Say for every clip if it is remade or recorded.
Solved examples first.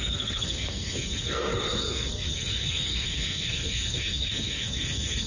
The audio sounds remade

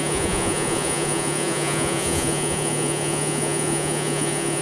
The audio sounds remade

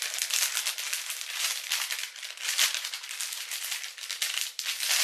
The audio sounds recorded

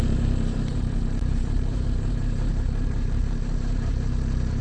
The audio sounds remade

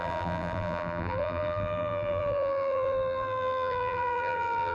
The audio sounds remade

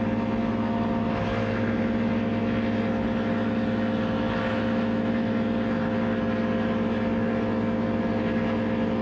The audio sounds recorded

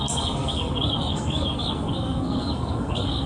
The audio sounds remade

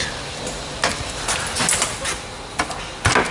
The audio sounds recorded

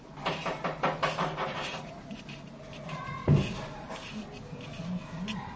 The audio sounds recorded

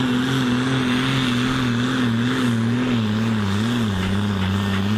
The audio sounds recorded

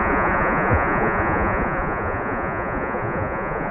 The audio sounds remade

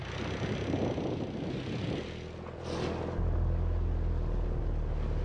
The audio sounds recorded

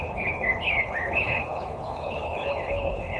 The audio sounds remade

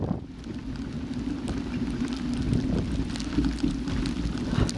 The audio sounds recorded